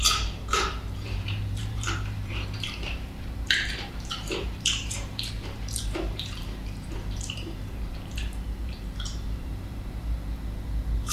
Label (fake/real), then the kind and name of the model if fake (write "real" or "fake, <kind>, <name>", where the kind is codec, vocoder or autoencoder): fake, vocoder, BigVGAN v2